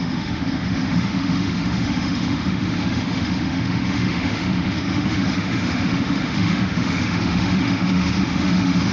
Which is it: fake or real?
fake